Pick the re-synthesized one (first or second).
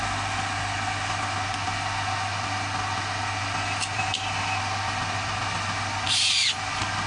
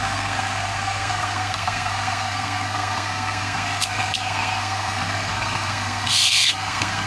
second